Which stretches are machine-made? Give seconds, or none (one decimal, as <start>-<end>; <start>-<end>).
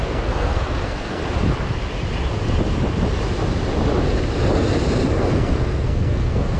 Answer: 0.0-1.2; 5.2-6.6